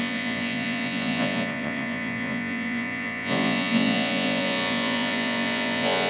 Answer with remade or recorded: remade